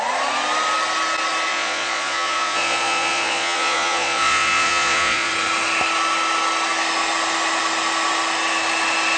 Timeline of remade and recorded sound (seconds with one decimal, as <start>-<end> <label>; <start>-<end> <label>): 0.0-1.5 recorded; 1.5-5.3 remade; 5.3-9.2 recorded